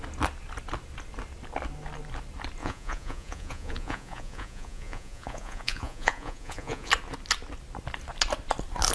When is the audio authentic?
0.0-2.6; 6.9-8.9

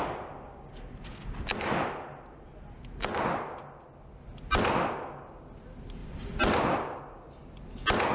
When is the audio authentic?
0.0-6.0; 7.0-8.1

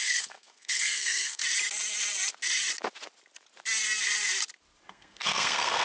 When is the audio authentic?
1.4-4.9

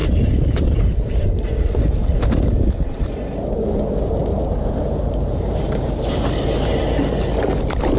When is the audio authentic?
3.1-4.2; 6.2-8.0

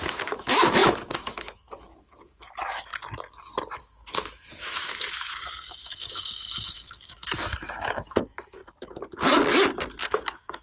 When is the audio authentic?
2.9-3.8; 8.6-10.0

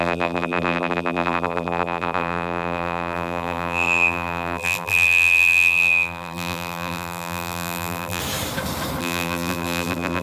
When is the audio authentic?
8.2-9.0

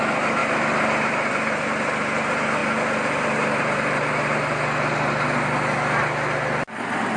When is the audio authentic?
0.0-7.2